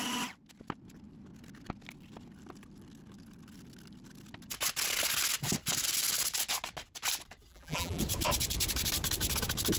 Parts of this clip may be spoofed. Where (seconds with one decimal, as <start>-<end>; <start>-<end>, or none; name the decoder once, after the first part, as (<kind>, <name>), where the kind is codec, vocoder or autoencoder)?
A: 7.5-8.0 (vocoder, BigVGAN v2)